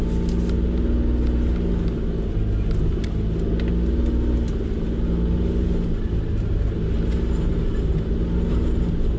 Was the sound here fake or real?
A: real